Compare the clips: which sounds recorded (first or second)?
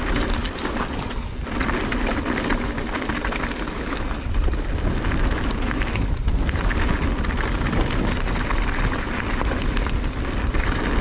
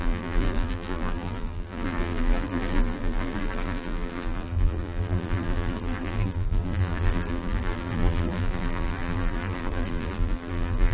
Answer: first